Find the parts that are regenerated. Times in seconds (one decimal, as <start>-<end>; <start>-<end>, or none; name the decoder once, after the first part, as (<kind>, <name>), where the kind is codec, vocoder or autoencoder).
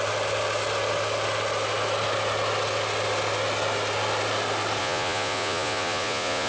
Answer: 4.8-6.5 (vocoder, Vocos)